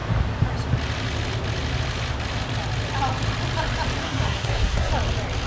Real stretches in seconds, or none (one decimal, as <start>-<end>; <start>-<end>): 0.0-4.0; 4.9-5.5